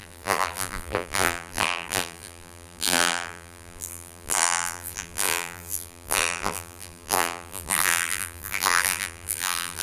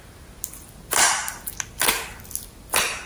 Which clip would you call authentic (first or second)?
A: second